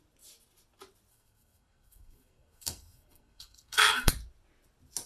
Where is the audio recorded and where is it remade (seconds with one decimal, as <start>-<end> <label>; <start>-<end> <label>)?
0.0-1.1 recorded; 1.1-4.1 remade; 4.1-5.1 recorded